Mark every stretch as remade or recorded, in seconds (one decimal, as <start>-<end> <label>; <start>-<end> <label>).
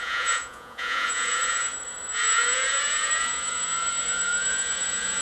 0.0-5.2 remade